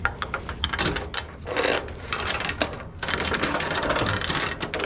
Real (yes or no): yes